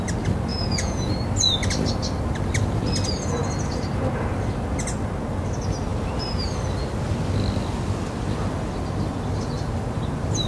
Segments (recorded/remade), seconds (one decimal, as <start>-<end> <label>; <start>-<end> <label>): 0.0-0.5 recorded; 0.5-1.1 remade; 1.1-10.5 recorded